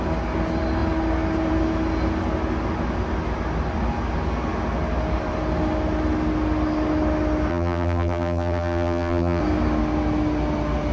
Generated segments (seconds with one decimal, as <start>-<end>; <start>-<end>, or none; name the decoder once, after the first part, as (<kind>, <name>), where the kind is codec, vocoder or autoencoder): 7.5-9.4 (vocoder, BigVGAN v2)